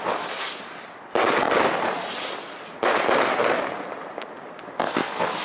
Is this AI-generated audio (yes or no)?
no